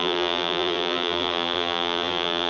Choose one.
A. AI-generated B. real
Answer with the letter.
A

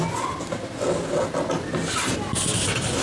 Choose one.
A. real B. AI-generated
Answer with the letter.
A